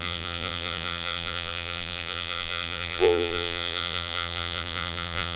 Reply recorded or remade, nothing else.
remade